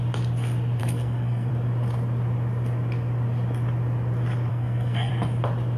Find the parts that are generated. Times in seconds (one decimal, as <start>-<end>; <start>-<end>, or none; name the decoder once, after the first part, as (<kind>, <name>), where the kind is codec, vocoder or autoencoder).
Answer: 0.8-1.5 (codec, SNAC); 4.5-5.1